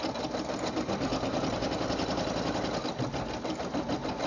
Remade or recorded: recorded